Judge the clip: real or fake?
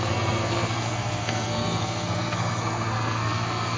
fake